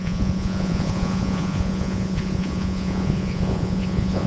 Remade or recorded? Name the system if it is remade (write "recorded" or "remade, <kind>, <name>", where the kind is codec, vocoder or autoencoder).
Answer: remade, vocoder, Vocos